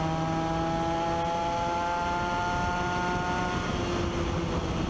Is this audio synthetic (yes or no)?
no